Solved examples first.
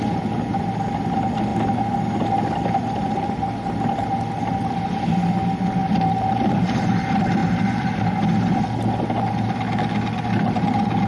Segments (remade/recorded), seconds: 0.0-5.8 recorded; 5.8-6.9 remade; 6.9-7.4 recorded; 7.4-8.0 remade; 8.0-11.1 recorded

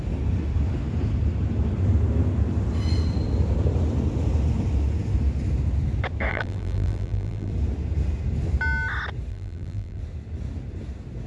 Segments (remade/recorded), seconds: 0.0-6.3 recorded; 6.3-7.5 remade; 7.5-9.3 recorded; 9.3-10.0 remade; 10.0-11.3 recorded

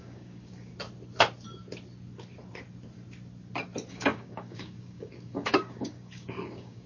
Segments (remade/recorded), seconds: 0.0-0.7 remade; 0.7-3.9 recorded; 3.9-6.9 remade